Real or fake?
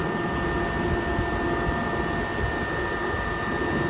real